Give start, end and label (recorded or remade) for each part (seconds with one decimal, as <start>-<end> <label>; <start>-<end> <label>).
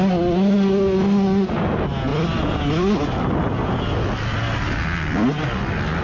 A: 0.0-6.0 recorded